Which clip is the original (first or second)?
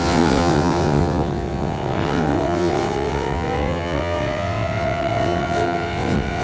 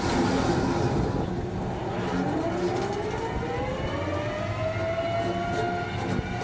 second